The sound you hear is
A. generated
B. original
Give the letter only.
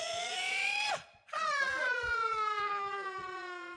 A